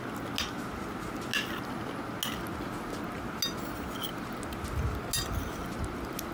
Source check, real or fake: real